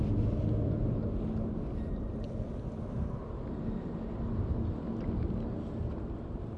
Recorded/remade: recorded